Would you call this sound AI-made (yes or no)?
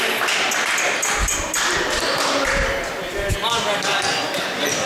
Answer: no